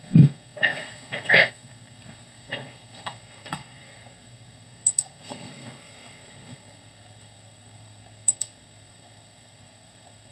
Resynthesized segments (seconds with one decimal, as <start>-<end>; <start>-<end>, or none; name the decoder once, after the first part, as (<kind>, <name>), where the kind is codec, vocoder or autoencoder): 0.0-10.3 (codec, SNAC)